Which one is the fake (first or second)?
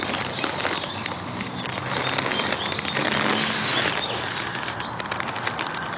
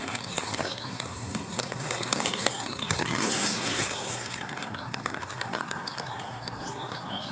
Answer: second